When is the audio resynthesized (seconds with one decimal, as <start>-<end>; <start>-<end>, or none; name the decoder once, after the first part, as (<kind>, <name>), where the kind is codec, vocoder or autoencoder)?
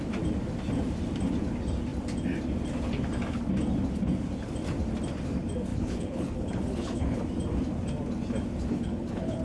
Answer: 5.7-7.2 (codec, HILCodec); 8.7-9.4